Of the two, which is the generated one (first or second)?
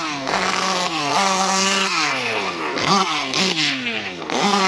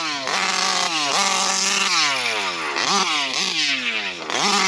first